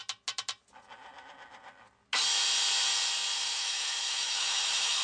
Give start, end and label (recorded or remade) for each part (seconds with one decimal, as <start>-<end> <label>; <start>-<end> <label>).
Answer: 0.0-3.5 recorded; 3.5-5.0 remade